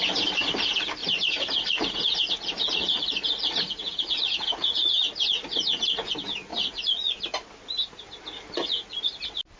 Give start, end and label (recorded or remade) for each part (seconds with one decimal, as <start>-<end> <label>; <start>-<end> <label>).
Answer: 0.0-1.0 recorded; 1.0-6.1 remade; 6.1-6.5 recorded; 6.5-7.2 remade; 7.2-9.6 recorded